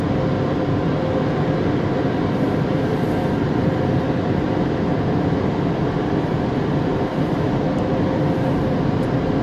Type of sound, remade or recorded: recorded